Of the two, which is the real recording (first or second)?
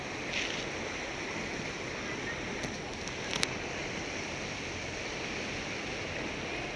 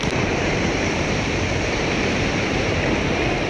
first